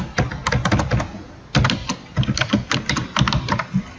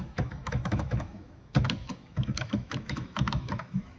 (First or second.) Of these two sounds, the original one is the first